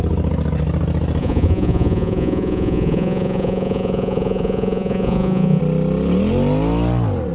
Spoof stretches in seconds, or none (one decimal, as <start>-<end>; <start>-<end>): 1.2-5.6

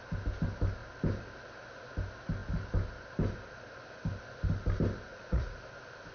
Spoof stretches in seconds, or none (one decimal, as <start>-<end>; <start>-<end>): 5.1-5.6